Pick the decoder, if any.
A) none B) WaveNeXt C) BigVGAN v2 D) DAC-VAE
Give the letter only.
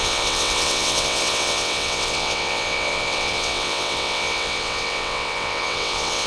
B